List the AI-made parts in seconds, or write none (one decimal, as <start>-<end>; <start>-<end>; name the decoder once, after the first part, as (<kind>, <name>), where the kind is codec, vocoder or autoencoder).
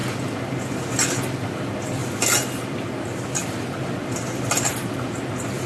none